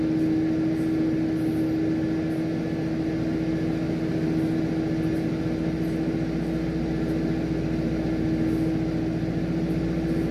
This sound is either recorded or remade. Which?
recorded